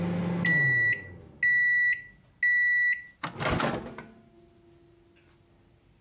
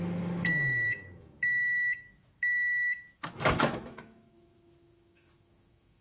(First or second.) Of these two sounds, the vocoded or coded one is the second